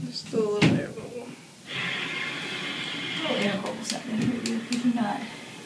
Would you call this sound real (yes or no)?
yes